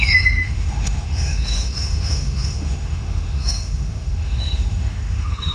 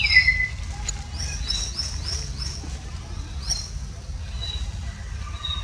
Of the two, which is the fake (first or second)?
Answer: first